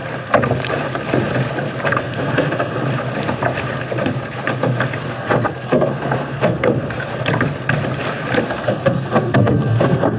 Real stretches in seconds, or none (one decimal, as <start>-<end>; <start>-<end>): 0.0-2.0; 2.8-5.0; 7.1-8.4